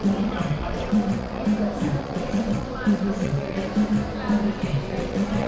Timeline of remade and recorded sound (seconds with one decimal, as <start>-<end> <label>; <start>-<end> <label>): 0.0-1.4 remade; 1.4-2.0 recorded; 2.0-3.7 remade; 3.7-4.5 recorded; 4.5-5.5 remade

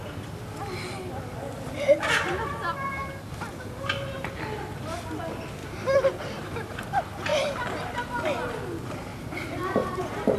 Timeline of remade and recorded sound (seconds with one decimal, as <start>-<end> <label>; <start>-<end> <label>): 0.0-5.6 recorded; 5.6-6.8 remade; 6.8-9.1 recorded; 9.1-10.4 remade

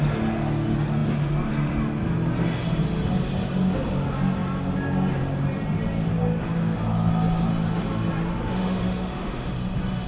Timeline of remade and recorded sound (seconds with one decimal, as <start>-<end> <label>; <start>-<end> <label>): 0.0-8.4 recorded; 8.4-9.5 remade; 9.5-10.1 recorded

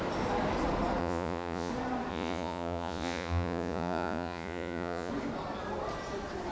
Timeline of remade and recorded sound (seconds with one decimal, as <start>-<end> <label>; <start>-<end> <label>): 0.0-1.0 recorded; 1.0-1.7 remade; 1.7-2.1 recorded; 2.1-5.1 remade; 5.1-6.5 recorded